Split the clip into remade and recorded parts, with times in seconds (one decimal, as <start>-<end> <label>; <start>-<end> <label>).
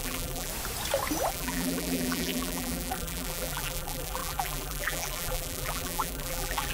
0.0-0.5 remade; 0.5-1.3 recorded; 1.3-6.7 remade